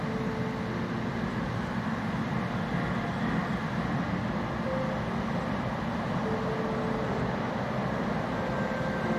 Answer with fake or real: real